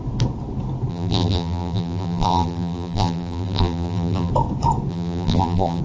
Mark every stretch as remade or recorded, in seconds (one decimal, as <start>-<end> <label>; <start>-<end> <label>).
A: 0.0-0.9 recorded; 0.9-4.3 remade; 4.3-4.9 recorded; 4.9-5.8 remade